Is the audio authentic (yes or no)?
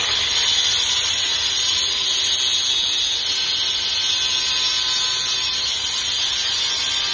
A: yes